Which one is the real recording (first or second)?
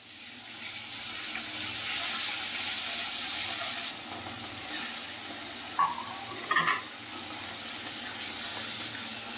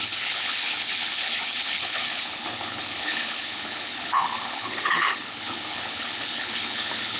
first